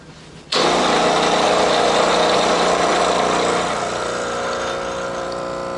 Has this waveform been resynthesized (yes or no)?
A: yes